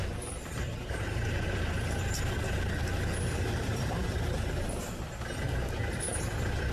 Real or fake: fake